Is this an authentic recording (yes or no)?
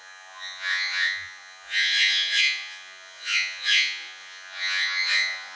no